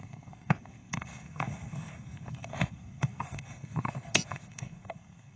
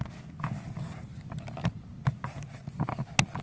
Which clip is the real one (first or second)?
second